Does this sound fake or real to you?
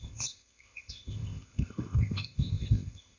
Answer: fake